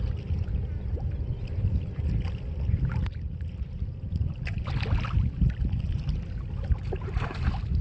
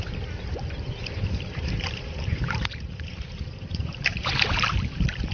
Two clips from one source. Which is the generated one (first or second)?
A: second